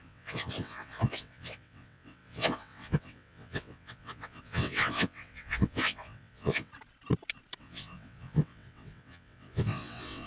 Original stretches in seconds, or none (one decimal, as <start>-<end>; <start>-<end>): 6.7-7.6